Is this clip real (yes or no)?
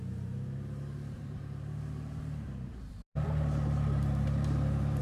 no